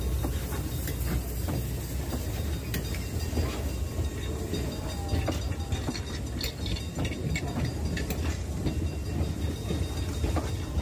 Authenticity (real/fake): real